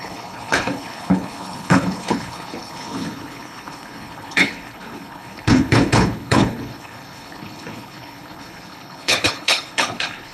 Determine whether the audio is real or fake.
fake